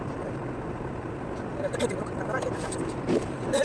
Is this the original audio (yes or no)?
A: no